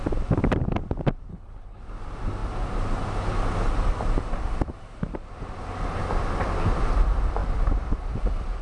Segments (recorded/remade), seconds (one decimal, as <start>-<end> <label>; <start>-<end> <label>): 0.0-1.3 recorded; 1.3-1.8 remade; 1.8-8.6 recorded